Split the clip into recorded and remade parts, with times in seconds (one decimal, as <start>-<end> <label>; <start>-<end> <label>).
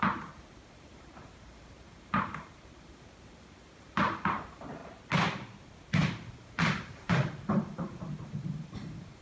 0.0-0.7 recorded; 0.7-4.8 remade; 4.8-5.9 recorded; 5.9-9.2 remade